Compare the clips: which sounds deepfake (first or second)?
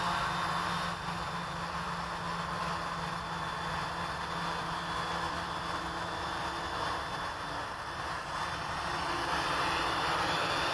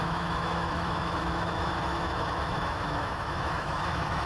second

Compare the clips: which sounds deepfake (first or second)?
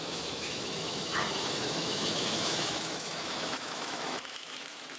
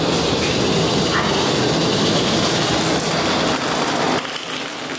first